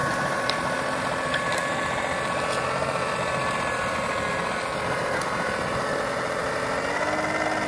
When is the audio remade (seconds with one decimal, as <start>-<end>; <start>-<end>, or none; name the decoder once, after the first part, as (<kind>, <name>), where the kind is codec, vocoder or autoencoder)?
0.0-4.0 (vocoder, BigVGAN v2)